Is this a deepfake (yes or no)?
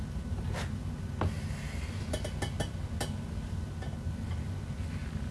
no